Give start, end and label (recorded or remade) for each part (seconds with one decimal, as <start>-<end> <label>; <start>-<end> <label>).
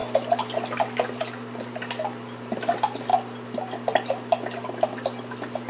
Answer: 0.0-5.7 recorded